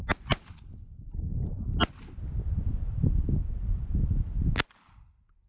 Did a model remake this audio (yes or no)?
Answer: no